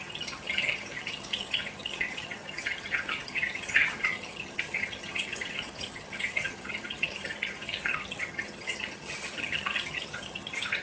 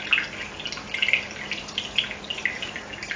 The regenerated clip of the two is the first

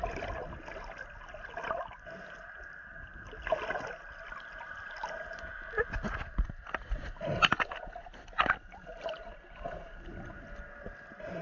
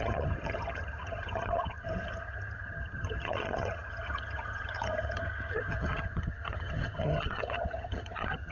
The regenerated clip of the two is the second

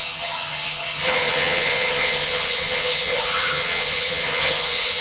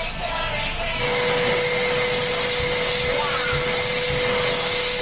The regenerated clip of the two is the first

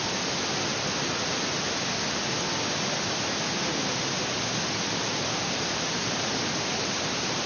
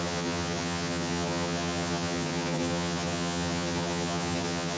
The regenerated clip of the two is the second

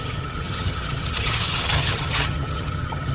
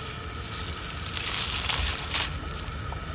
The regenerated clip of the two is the first